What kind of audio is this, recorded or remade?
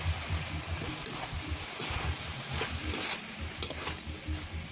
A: recorded